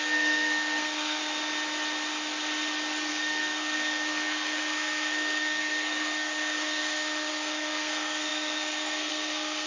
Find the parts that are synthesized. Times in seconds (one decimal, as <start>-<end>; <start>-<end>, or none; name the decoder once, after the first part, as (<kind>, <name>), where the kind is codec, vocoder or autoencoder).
0.0-1.2 (codec, SNAC); 3.1-9.7

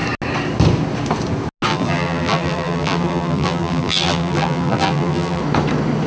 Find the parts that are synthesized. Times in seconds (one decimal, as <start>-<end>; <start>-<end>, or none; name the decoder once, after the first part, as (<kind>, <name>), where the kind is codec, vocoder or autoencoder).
1.7-5.4 (vocoder, BigVGAN v2)

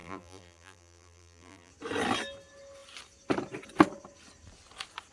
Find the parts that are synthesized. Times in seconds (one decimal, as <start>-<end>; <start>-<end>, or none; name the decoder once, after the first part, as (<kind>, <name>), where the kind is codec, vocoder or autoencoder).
0.0-1.7 (vocoder, BigVGAN v2)

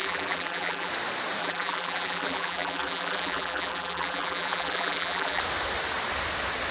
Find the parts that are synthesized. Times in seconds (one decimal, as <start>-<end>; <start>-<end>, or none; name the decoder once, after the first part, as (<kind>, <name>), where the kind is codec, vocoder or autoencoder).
0.0-0.9 (vocoder, BigVGAN v2); 1.4-5.4

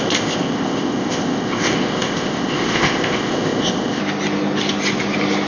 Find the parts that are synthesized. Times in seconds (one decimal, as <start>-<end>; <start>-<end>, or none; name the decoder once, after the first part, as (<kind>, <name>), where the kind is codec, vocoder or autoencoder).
0.0-4.0 (codec, ZipCodec)

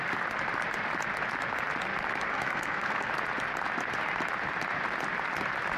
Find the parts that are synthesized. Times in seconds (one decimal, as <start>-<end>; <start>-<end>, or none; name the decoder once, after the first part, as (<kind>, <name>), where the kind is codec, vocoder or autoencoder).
2.3-3.1 (codec, SNAC)

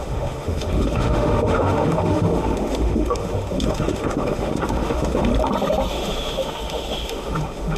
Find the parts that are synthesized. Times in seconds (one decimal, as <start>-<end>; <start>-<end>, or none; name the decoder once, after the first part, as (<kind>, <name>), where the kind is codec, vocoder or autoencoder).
0.0-5.3 (autoencoder, DAC-VAE); 5.9-7.8

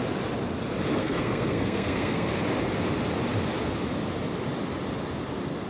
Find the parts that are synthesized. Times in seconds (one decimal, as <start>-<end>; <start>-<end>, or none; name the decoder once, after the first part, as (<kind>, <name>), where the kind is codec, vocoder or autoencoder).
1.0-2.3 (codec, SNAC)